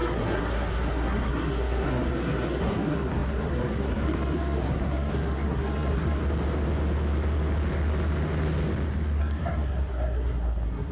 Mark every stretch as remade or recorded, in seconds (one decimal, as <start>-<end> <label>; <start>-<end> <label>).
0.0-6.2 remade; 6.2-9.2 recorded; 9.2-10.9 remade